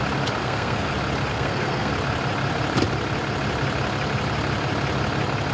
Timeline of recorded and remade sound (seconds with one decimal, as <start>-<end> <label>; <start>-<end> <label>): 0.0-0.4 recorded; 0.4-0.9 remade; 0.9-1.3 recorded; 1.3-1.9 remade; 1.9-5.5 recorded